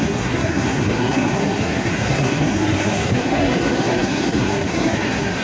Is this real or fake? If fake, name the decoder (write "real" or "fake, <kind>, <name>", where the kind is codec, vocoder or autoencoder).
fake, codec, SNAC